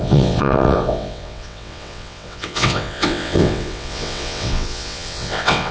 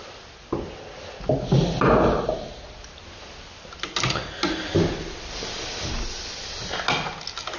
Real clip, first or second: second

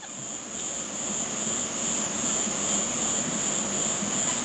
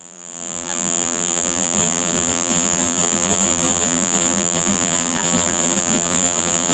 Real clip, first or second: first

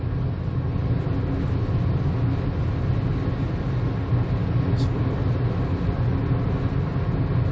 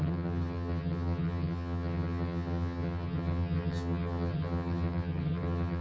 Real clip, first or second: first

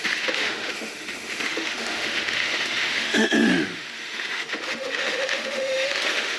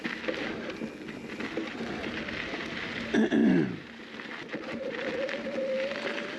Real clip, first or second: second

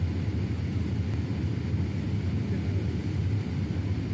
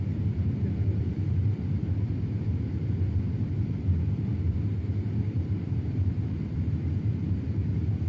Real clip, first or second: first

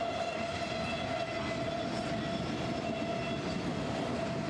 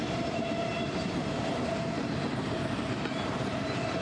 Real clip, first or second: first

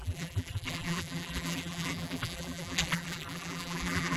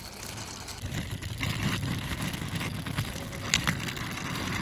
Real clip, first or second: second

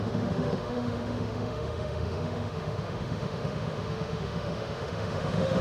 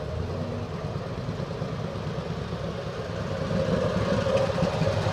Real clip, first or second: second